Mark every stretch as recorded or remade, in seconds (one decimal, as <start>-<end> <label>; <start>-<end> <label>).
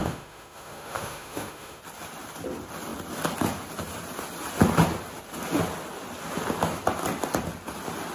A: 0.0-1.8 remade; 1.8-8.1 recorded